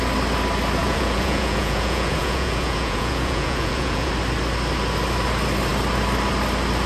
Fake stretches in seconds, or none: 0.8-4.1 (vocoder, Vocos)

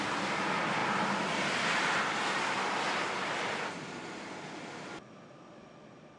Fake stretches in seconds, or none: none